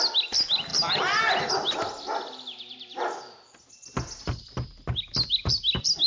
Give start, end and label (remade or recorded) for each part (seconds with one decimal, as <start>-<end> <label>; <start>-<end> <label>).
0.0-6.1 recorded